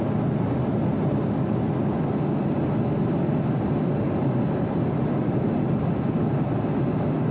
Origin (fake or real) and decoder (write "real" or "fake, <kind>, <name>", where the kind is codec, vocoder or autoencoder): real